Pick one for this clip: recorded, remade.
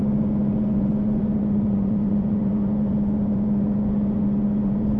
remade